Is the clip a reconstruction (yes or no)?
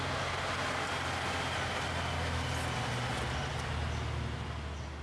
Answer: no